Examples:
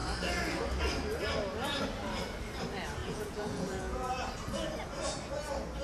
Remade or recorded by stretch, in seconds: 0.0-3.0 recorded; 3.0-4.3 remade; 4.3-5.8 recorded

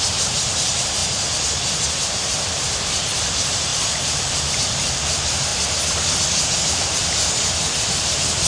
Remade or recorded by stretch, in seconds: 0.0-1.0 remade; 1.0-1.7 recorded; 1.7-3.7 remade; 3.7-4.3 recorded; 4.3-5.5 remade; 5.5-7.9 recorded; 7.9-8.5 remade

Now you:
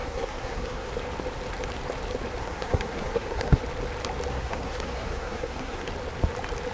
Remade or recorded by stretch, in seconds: 0.0-0.9 remade; 0.9-2.4 recorded; 2.4-3.6 remade; 3.6-4.3 recorded; 4.3-5.9 remade; 5.9-6.7 recorded